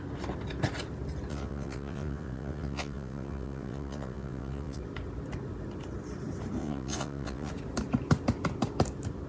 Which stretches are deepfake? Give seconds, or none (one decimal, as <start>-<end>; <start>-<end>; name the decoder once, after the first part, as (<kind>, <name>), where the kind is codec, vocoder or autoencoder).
1.3-4.8 (vocoder, WaveNeXt); 6.6-7.5

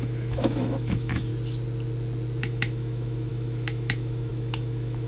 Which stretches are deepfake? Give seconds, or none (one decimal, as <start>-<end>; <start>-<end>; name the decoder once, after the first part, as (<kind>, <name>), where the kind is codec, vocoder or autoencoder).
0.0-1.3 (autoencoder, DAC-VAE); 2.4-5.1

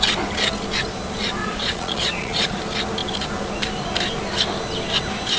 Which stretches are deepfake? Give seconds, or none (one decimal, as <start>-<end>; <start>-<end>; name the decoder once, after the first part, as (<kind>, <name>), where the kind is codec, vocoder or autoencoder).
1.4-2.6 (vocoder, Vocos)

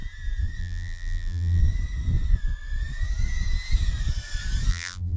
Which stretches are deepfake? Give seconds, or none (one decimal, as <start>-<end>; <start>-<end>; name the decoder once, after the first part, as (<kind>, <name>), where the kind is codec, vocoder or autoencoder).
0.6-1.6 (vocoder, BigVGAN v2); 4.7-5.2

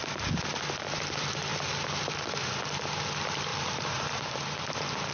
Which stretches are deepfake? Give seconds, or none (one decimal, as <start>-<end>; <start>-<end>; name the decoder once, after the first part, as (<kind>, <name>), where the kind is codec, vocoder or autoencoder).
3.5-4.6 (vocoder, BigVGAN v2)

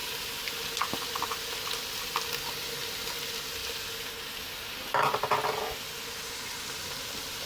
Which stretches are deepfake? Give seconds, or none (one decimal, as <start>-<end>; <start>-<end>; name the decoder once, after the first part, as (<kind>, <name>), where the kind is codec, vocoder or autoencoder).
none

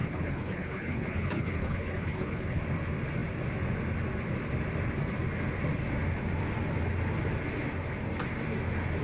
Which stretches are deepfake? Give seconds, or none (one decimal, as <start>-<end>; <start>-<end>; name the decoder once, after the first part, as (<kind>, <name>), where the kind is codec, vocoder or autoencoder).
0.0-2.6 (codec, HILCodec)

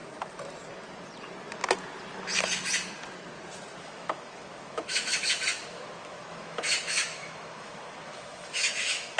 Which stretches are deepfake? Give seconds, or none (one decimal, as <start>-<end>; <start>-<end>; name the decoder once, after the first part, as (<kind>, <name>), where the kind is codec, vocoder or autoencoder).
3.8-9.2 (autoencoder, DAC-VAE)